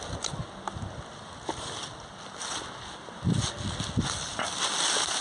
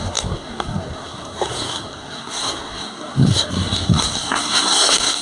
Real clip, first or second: first